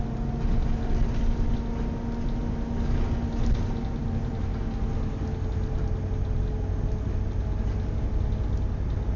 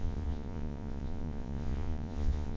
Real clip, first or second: first